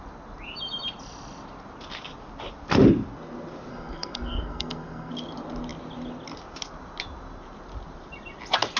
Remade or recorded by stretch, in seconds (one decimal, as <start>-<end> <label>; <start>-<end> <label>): 0.0-3.7 recorded; 3.7-5.1 remade; 5.1-8.8 recorded